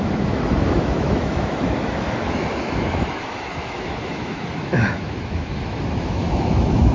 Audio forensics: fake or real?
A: fake